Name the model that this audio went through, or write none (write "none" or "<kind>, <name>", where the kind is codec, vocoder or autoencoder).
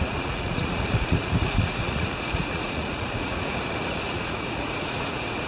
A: vocoder, Vocos